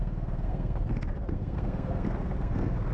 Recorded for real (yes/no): no